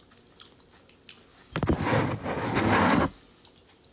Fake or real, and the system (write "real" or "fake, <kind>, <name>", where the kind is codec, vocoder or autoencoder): real